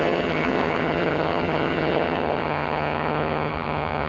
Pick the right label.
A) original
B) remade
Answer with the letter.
B